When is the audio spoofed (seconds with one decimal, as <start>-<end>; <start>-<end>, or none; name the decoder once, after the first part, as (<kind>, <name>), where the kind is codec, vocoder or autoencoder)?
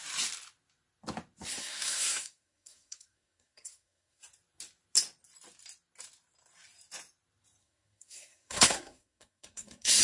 1.5-4.2 (codec, SNAC); 7.6-10.0